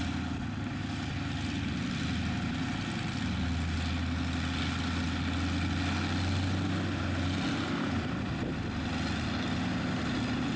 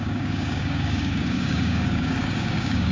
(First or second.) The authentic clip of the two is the first